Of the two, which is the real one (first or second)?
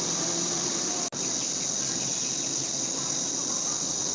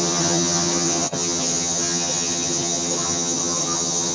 first